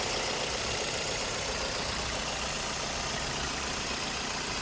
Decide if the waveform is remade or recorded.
recorded